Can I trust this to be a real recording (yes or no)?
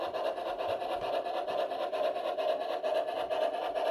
yes